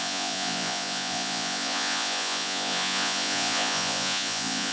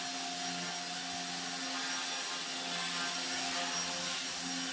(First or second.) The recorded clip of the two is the second